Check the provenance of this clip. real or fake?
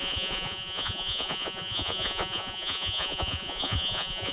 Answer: fake